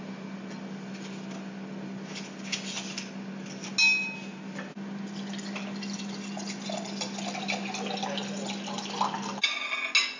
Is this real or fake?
real